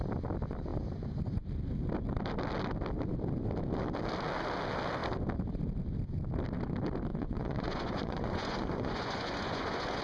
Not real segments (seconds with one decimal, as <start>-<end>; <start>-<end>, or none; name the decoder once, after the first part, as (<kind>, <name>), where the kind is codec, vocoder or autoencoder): 7.1-10.0 (vocoder, Vocos)